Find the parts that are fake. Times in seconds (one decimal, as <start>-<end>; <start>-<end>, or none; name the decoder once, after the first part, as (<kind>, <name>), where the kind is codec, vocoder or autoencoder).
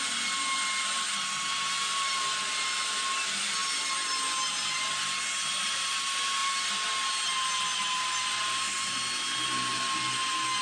none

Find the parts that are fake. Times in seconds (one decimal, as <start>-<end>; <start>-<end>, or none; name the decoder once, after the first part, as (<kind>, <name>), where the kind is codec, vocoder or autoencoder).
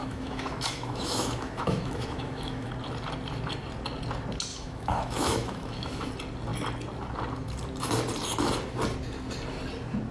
0.0-2.7 (autoencoder, DAC-VAE); 4.5-6.1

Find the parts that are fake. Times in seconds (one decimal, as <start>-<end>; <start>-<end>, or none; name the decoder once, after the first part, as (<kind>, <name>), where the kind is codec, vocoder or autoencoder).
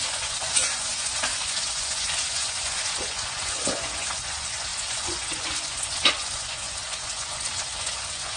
0.0-8.4 (vocoder, Vocos)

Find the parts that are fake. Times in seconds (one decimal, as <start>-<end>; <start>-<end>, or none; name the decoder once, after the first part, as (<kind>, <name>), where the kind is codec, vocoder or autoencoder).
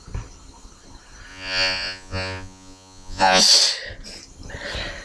1.3-3.4 (vocoder, Vocos)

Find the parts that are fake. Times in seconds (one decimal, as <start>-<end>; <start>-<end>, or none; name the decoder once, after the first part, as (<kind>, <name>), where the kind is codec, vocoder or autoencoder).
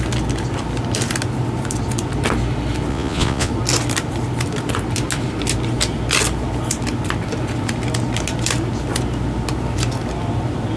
2.9-3.5 (vocoder, Vocos)